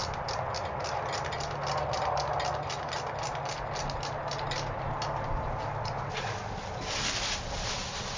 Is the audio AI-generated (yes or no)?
no